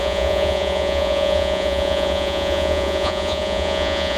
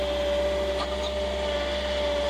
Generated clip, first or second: first